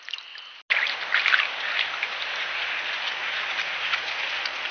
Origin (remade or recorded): recorded